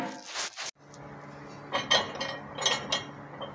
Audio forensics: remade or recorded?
recorded